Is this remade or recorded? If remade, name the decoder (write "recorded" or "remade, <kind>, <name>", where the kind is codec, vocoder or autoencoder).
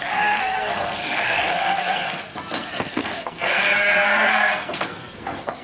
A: remade, codec, SNAC